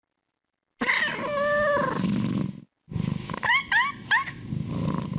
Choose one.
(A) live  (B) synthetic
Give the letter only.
A